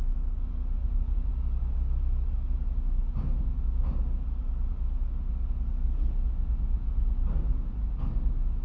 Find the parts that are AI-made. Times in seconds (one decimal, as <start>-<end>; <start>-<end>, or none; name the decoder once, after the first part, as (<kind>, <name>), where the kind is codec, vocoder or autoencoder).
0.8-1.3 (vocoder, BigVGAN v2)